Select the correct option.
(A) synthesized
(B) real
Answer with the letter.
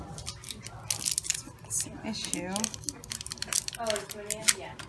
B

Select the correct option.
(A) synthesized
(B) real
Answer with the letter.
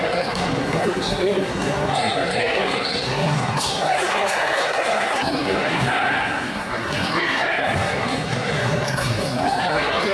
A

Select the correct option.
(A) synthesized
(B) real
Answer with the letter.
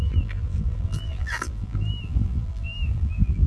A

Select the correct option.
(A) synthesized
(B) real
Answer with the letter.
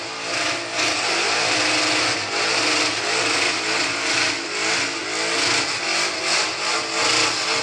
B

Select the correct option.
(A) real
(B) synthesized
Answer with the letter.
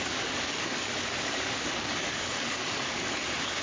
B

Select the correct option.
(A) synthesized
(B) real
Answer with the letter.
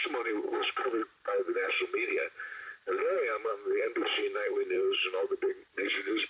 A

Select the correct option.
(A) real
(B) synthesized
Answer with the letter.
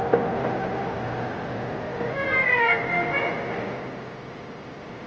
A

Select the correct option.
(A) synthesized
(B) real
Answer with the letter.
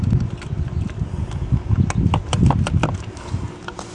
B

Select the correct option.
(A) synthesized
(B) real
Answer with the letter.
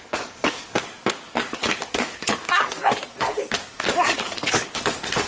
A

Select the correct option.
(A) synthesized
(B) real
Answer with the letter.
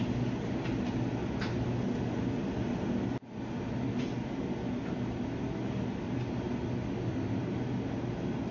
B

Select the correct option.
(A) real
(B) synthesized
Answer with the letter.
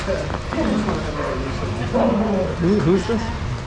A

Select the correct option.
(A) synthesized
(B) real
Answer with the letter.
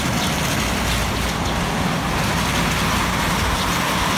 B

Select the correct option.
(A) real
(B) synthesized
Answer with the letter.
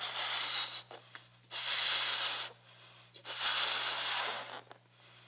A